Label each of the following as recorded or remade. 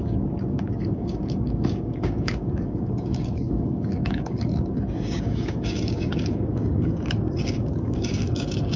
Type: remade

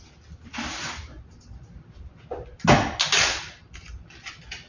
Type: recorded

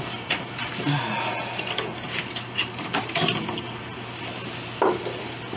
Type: recorded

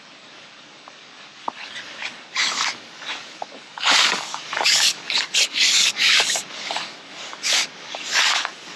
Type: remade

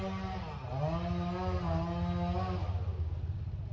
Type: recorded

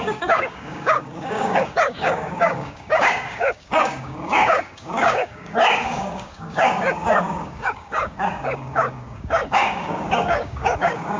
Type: remade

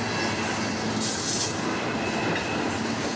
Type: recorded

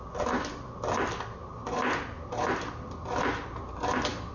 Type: recorded